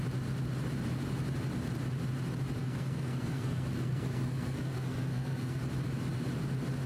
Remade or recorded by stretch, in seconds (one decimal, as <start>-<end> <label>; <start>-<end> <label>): 0.0-2.6 recorded; 2.6-5.6 remade; 5.6-6.9 recorded